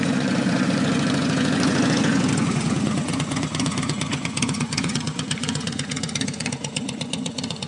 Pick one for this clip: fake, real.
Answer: fake